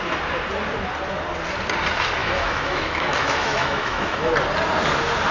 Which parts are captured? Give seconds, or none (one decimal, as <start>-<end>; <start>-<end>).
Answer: 0.0-2.2; 4.3-5.3